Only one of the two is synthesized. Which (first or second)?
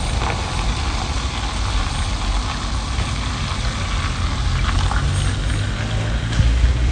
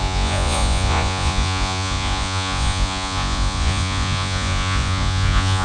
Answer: second